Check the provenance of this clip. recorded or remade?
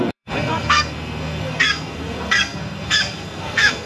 remade